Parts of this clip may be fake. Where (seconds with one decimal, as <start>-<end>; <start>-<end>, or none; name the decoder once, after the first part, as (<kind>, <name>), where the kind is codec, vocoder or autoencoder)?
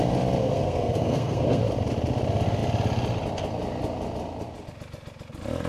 0.4-1.6 (codec, SNAC)